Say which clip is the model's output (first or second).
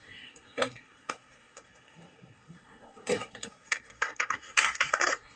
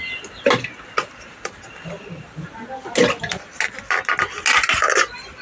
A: first